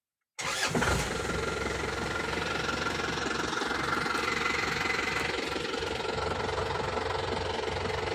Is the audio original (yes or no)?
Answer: yes